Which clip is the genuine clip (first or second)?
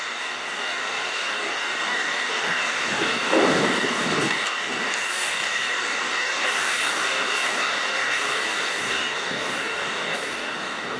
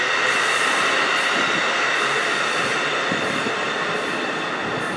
second